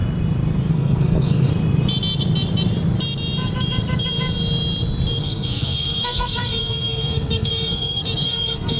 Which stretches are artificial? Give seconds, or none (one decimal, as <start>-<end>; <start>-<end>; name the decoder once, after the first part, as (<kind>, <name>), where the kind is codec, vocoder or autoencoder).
0.7-1.5 (codec, SNAC); 5.2-8.8